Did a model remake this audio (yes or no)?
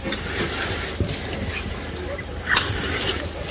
no